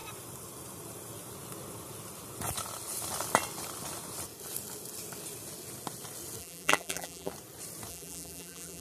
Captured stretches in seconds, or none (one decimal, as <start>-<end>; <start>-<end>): 0.0-6.4; 7.3-7.9